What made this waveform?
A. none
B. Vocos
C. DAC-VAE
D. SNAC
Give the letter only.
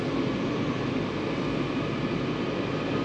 A